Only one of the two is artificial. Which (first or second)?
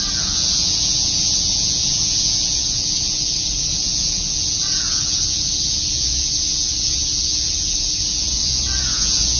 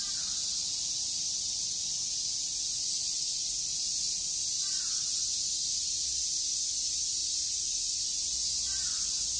first